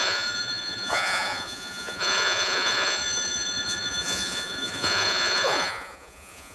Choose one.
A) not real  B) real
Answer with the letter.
A